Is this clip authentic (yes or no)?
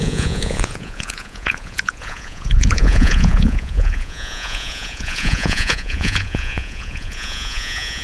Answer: no